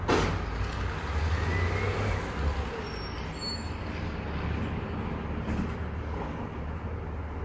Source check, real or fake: real